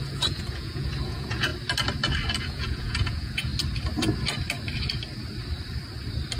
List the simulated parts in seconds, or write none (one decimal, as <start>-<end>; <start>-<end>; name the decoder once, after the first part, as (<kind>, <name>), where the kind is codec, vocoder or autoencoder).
0.0-1.5 (vocoder, Vocos); 2.4-3.5